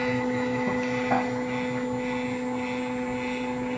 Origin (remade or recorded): recorded